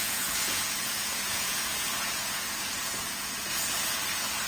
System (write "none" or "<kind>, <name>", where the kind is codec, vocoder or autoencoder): vocoder, Vocos